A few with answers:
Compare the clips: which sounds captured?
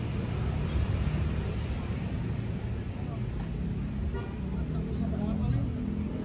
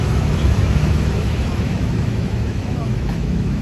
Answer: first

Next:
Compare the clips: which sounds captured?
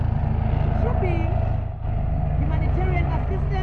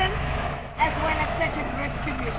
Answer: first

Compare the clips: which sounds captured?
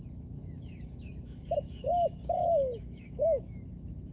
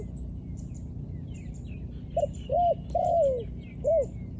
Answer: second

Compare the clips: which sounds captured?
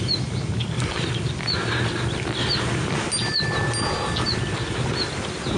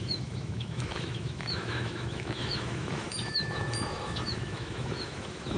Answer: first